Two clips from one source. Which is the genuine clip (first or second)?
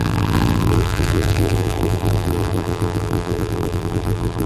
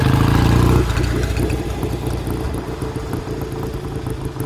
second